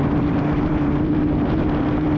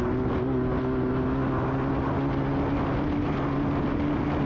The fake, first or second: first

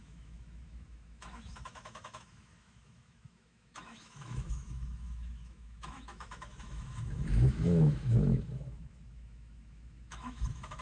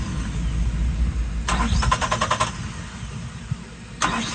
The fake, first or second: first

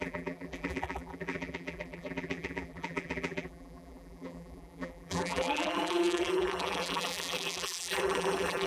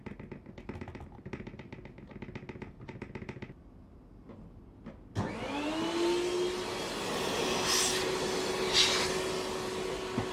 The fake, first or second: first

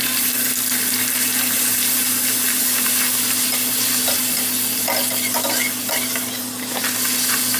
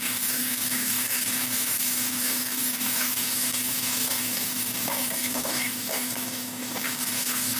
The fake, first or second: second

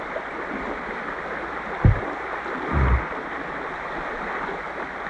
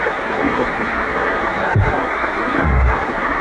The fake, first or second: second